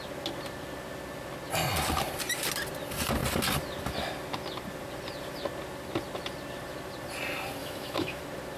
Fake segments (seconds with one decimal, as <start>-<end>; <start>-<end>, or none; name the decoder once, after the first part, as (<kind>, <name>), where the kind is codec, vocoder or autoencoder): 7.6-8.2 (autoencoder, DAC-VAE)